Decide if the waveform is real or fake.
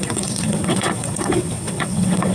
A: fake